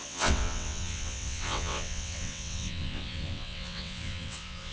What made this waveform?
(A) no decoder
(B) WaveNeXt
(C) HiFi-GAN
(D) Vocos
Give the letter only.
B